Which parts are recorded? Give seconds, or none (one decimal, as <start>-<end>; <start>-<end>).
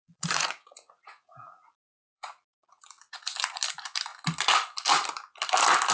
1.7-2.1; 3.6-5.9